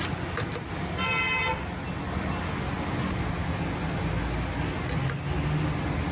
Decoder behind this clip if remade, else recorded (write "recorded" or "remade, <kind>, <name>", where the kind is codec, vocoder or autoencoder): recorded